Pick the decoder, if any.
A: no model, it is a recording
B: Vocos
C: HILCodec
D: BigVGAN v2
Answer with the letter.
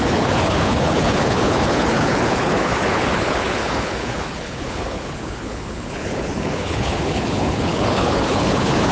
C